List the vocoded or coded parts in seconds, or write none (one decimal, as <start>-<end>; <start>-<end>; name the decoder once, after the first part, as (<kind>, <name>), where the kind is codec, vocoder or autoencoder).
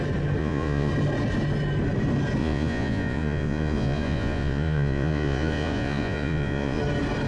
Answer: 0.4-0.9 (vocoder, Vocos); 2.4-6.8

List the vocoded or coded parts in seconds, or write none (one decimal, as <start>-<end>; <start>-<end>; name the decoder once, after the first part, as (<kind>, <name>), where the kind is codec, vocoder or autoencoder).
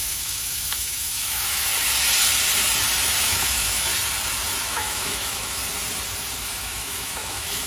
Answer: 0.0-1.7 (autoencoder, DAC-VAE); 3.2-3.9; 4.7-5.6; 6.4-7.7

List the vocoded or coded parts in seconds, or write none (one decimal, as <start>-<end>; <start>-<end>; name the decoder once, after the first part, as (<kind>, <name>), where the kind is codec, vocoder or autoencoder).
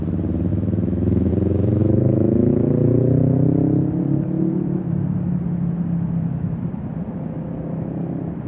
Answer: 0.5-1.3 (autoencoder, DAC-VAE); 1.8-2.5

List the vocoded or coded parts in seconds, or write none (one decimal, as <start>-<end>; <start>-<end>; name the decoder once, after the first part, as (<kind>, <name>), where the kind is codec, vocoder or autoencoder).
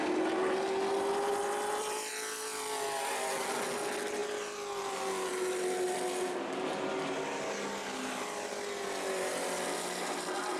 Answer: 1.3-2.1 (vocoder, BigVGAN v2)